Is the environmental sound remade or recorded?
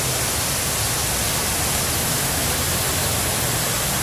recorded